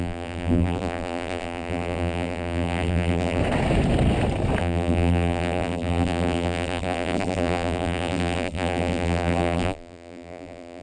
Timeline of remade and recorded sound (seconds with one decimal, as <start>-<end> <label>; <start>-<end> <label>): 0.0-3.4 remade; 3.4-4.6 recorded; 4.6-10.8 remade